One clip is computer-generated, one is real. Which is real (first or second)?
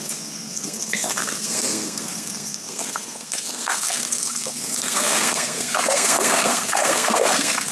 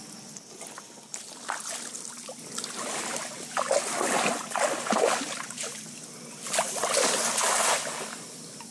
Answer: second